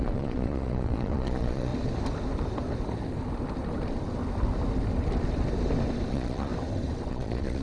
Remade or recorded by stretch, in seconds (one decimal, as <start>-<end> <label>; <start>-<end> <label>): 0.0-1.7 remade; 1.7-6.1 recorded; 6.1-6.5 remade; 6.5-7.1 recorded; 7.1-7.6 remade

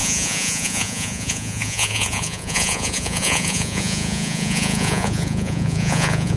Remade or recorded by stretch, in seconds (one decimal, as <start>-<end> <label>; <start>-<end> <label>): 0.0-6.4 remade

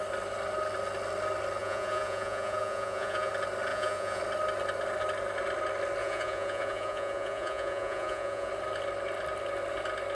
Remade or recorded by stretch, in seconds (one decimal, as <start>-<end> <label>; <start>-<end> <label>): 0.0-1.6 recorded; 1.6-3.3 remade; 3.3-3.7 recorded; 3.7-4.2 remade; 4.2-6.0 recorded; 6.0-8.5 remade; 8.5-10.1 recorded

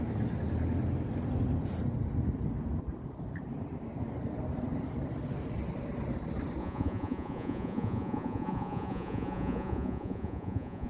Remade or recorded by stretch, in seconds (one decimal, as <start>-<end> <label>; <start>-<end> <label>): 0.0-6.6 recorded; 6.6-10.9 remade

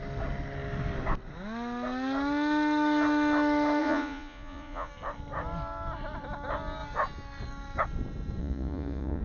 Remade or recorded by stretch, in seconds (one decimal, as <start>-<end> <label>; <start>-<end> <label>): 0.0-3.8 recorded; 3.8-4.9 remade; 4.9-8.4 recorded; 8.4-9.2 remade